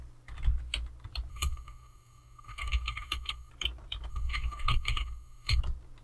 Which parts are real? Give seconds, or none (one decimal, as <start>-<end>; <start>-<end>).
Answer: 0.0-1.3; 3.5-4.1; 5.6-6.0